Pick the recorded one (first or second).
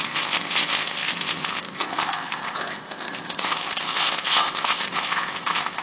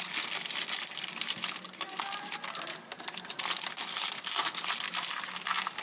second